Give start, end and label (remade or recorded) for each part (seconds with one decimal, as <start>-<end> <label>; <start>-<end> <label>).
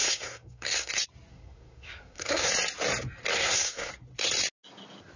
0.0-0.9 remade; 0.9-1.3 recorded; 1.3-2.5 remade; 2.5-3.3 recorded; 3.3-3.9 remade; 3.9-5.2 recorded